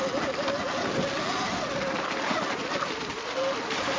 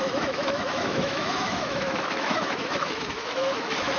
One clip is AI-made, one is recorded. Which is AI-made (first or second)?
second